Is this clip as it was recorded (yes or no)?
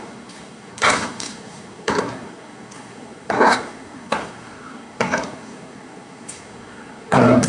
no